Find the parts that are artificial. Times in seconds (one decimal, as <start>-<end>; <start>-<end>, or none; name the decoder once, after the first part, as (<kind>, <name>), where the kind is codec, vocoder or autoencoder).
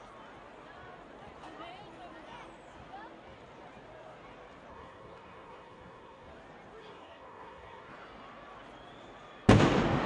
4.7-6.3 (codec, SNAC); 6.8-7.9